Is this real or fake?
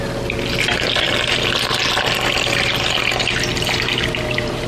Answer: real